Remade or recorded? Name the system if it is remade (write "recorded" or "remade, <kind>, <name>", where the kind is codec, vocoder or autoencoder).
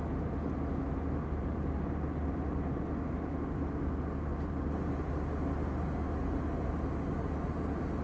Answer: recorded